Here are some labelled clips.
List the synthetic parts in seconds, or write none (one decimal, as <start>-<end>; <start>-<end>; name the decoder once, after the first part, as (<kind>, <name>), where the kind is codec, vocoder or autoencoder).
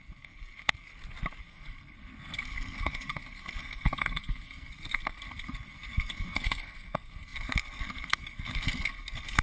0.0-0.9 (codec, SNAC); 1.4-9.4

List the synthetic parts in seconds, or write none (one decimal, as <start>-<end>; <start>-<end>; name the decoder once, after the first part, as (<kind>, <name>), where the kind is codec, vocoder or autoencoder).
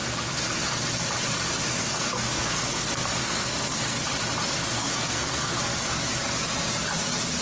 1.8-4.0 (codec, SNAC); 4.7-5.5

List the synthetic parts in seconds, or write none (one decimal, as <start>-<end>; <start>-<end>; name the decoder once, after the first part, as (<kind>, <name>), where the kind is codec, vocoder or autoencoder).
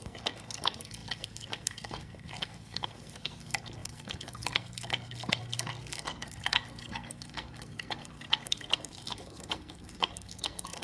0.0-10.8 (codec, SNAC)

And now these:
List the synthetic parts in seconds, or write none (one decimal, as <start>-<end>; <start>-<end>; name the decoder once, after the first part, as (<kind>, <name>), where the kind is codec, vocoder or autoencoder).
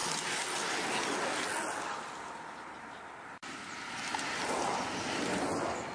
none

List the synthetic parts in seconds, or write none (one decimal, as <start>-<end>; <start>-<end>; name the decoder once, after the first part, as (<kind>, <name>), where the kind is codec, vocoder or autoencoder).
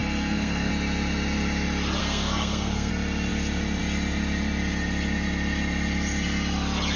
0.0-0.7 (codec, SNAC); 2.0-2.9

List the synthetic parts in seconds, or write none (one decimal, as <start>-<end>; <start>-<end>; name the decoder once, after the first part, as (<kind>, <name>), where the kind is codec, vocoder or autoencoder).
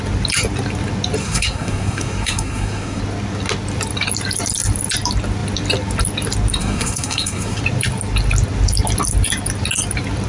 1.2-3.0 (codec, SNAC); 6.6-7.6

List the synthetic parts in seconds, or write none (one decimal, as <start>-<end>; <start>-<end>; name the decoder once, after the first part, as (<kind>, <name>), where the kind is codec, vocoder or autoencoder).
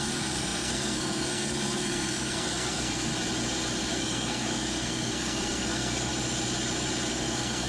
0.0-3.1 (codec, SNAC); 3.9-6.1; 7.1-7.7